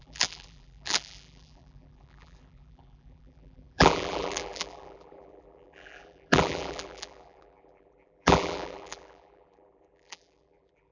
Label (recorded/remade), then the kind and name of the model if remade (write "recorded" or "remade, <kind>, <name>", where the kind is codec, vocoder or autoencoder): remade, vocoder, BigVGAN v2